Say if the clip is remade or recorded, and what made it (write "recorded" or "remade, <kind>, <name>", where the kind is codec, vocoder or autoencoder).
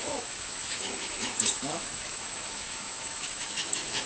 remade, autoencoder, DAC-VAE